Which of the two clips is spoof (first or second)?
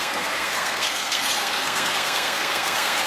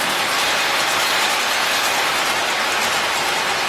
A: first